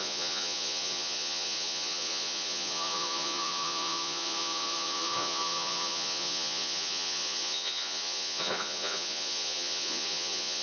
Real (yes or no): no